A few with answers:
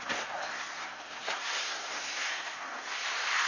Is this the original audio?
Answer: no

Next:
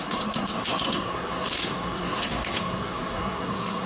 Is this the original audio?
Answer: no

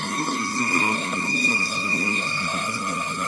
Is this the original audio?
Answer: no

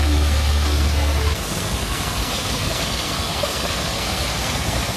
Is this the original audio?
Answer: no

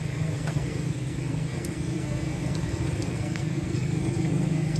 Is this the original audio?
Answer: no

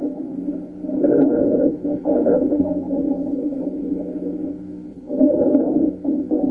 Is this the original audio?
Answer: no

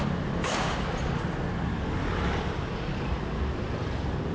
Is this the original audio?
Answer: yes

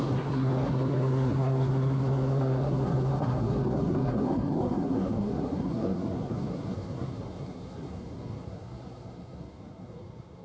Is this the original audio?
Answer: no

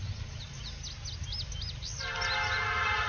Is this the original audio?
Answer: yes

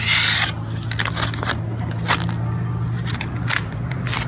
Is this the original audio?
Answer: yes